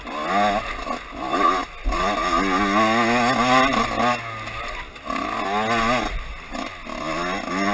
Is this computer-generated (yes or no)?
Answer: no